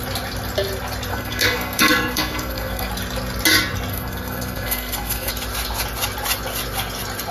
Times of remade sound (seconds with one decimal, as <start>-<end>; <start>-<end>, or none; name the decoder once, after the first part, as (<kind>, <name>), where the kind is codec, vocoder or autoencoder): 1.1-2.9 (codec, SNAC); 3.9-5.3